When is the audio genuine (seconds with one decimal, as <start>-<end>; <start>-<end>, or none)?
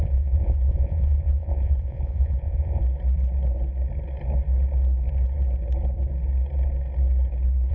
2.8-7.7